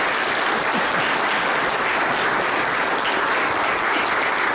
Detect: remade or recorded recorded